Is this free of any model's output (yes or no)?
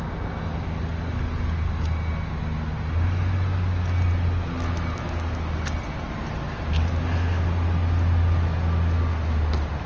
yes